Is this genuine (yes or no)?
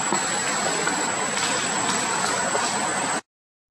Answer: yes